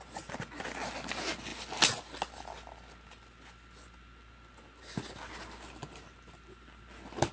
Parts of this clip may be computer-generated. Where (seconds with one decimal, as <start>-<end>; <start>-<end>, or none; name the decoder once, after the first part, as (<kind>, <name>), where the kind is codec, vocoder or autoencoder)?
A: none